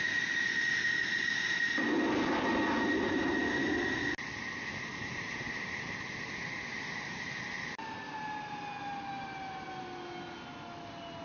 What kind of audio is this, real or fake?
real